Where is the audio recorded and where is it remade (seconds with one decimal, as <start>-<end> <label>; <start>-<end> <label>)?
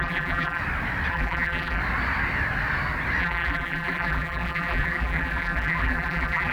0.0-0.6 remade; 0.6-1.1 recorded; 1.1-1.8 remade; 1.8-3.2 recorded; 3.2-6.5 remade